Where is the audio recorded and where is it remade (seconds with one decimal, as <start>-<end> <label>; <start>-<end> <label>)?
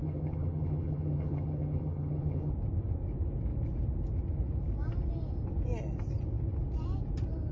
0.0-2.5 remade; 2.5-7.5 recorded